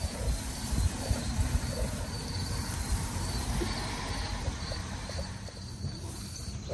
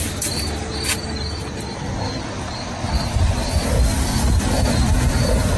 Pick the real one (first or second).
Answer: second